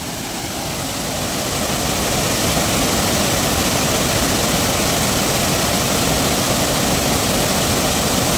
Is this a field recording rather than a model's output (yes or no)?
yes